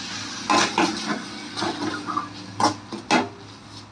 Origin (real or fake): real